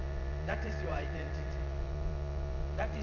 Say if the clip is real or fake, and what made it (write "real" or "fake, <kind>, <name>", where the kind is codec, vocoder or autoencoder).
fake, vocoder, Vocos